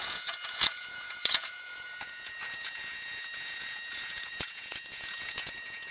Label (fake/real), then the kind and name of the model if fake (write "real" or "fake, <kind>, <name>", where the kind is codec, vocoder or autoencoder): fake, vocoder, Vocos